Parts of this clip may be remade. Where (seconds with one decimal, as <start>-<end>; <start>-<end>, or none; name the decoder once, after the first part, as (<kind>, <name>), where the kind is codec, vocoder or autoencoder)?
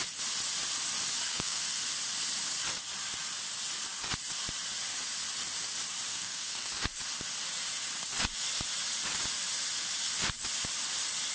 1.3-1.8 (codec, SNAC); 6.1-6.7